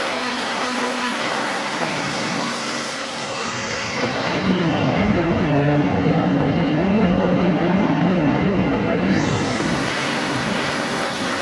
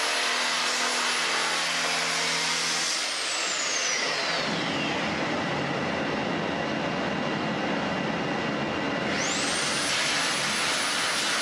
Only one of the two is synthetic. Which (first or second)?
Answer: first